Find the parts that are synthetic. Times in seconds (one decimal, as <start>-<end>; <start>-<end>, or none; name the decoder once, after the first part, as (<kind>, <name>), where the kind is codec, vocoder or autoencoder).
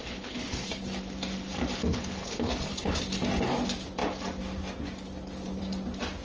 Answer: 0.0-0.8 (codec, HILCodec); 1.9-3.0